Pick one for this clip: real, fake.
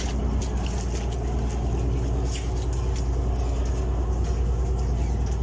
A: real